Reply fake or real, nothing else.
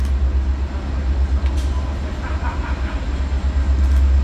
real